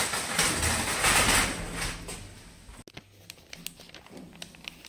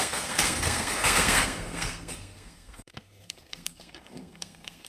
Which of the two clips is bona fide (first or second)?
first